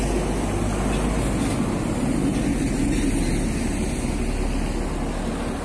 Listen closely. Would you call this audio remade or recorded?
recorded